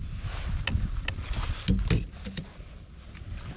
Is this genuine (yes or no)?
yes